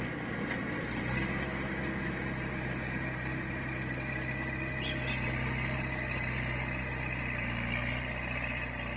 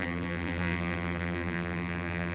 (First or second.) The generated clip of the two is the second